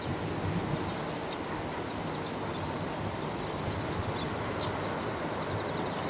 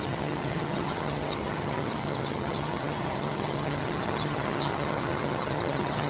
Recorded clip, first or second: first